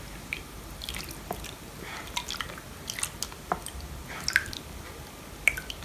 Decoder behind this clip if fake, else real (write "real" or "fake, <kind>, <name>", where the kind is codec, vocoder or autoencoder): real